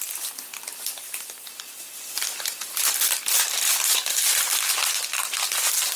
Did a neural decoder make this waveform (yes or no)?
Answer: yes